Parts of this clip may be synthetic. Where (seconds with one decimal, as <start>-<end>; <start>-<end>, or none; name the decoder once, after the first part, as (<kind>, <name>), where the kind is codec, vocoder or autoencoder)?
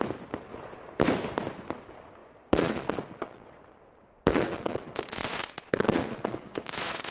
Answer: 0.5-1.0 (vocoder, Vocos); 2.2-3.6; 4.3-7.1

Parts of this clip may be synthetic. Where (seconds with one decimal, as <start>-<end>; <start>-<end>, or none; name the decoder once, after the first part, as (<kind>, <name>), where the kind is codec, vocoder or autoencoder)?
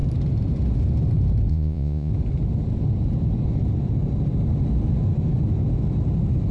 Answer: 1.5-2.1 (vocoder, Vocos)